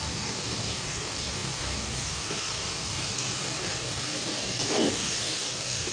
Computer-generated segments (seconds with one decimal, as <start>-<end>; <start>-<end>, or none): 0.0-5.9